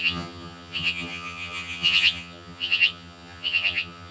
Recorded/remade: remade